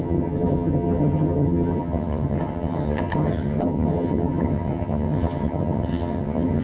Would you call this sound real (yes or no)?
no